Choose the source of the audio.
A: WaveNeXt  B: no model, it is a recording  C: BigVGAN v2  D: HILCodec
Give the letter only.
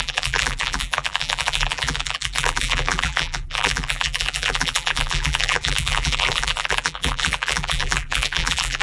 C